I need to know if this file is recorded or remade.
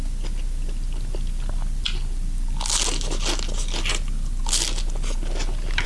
recorded